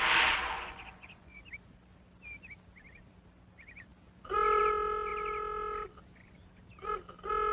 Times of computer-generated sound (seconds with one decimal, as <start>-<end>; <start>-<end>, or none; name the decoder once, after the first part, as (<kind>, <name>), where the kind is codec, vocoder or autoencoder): 0.4-1.4 (vocoder, Vocos)